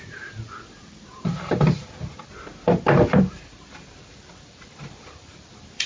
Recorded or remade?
remade